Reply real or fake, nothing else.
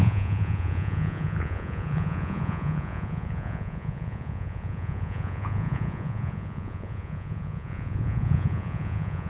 fake